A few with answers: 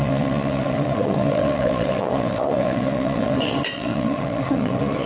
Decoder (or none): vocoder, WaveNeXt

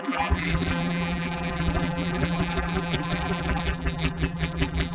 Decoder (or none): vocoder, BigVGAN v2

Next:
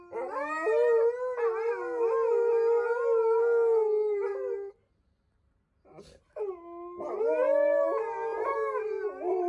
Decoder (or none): none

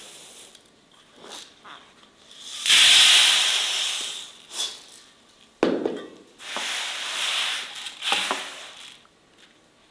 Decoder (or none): none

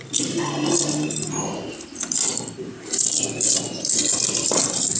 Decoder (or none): vocoder, BigVGAN v2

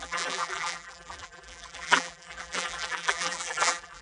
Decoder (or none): vocoder, BigVGAN v2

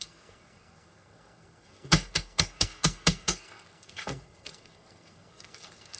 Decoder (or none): codec, SNAC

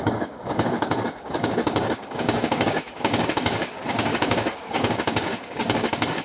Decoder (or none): codec, DAC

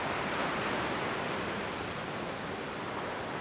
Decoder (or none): none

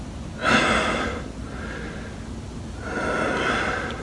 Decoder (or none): none